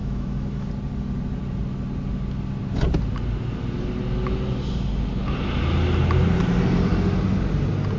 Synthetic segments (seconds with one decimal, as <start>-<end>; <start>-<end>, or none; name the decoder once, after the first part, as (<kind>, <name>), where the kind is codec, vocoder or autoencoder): 0.0-0.7 (autoencoder, DAC-VAE)